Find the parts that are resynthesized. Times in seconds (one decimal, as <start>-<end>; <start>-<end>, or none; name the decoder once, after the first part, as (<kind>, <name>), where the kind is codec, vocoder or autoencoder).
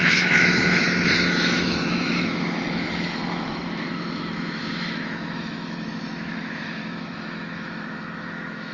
0.0-8.7 (autoencoder, DAC-VAE)